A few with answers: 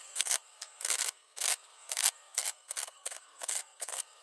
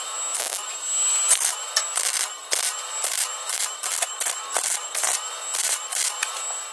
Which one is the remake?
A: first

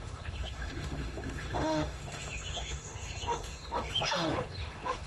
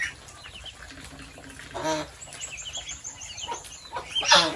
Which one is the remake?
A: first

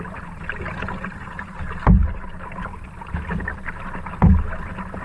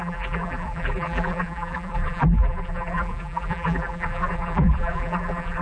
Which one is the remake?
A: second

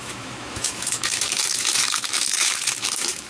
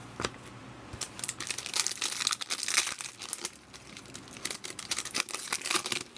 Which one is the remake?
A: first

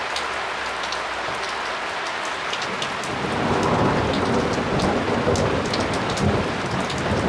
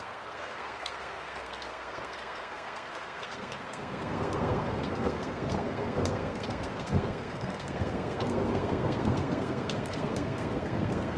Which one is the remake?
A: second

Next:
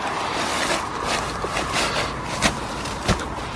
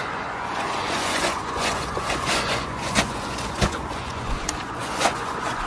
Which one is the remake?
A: second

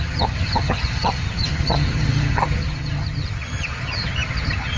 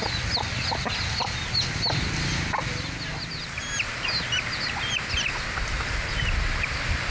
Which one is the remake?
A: first